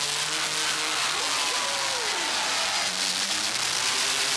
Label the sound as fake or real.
real